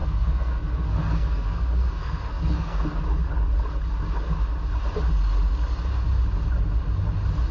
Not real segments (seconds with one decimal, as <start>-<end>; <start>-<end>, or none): 0.0-3.0